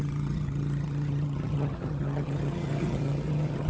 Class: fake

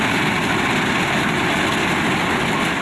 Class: real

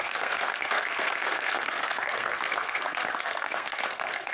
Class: fake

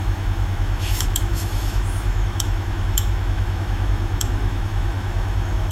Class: fake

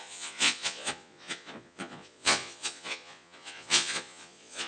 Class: fake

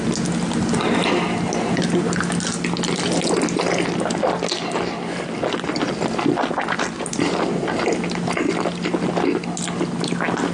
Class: real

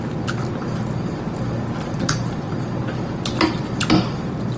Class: real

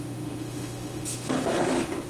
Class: fake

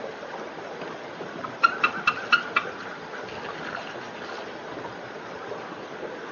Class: real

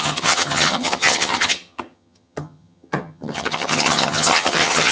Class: fake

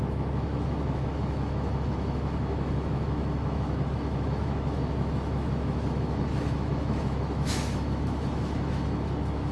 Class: fake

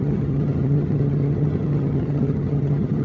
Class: fake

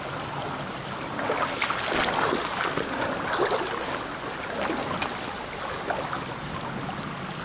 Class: real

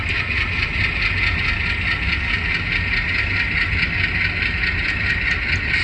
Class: real